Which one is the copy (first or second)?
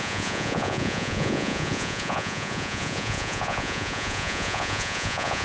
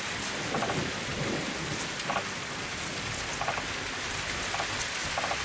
first